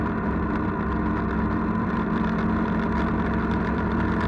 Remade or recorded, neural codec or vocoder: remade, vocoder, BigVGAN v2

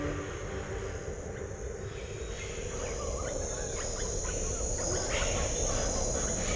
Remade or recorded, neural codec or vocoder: recorded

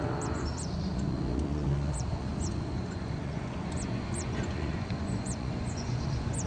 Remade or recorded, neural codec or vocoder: remade, vocoder, Vocos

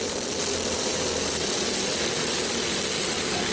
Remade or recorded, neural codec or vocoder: recorded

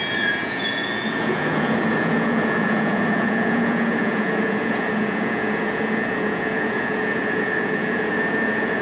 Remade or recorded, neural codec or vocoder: remade, vocoder, Vocos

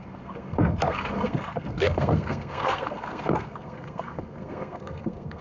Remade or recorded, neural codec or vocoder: remade, codec, SNAC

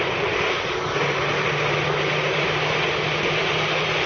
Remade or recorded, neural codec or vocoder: recorded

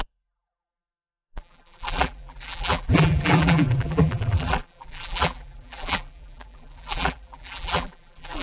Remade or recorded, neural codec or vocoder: remade, vocoder, BigVGAN v2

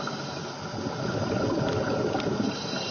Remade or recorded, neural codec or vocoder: recorded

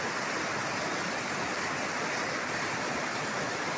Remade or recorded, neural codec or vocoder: recorded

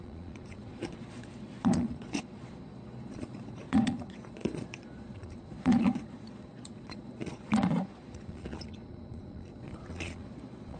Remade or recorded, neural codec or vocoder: remade, vocoder, Vocos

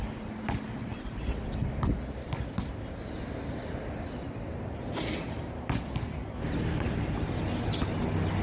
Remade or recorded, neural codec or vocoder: recorded